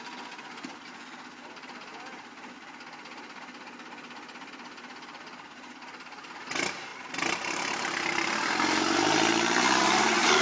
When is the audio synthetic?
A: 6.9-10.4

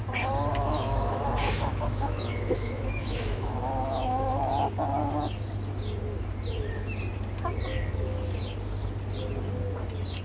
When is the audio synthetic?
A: 0.5-4.5; 7.7-8.4

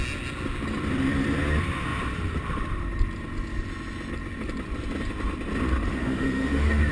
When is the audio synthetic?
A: 5.9-6.9

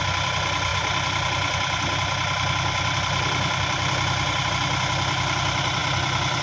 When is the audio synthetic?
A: none

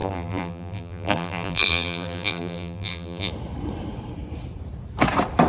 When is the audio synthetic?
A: 0.0-3.3